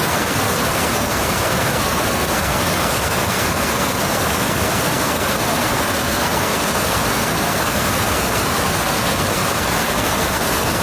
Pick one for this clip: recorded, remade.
remade